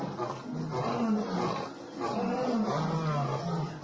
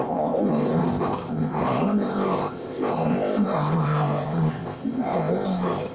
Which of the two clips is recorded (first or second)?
first